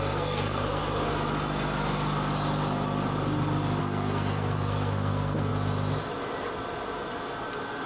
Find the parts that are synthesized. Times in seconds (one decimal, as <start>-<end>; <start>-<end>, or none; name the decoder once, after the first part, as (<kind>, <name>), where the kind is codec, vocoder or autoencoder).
0.0-0.8 (codec, SNAC); 3.8-5.5